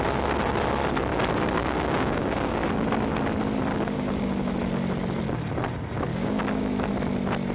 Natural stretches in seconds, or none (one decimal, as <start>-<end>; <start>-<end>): 0.0-1.6; 2.6-3.7; 4.5-6.1; 6.9-7.5